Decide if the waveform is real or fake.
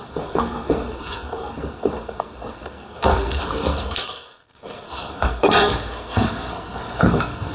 fake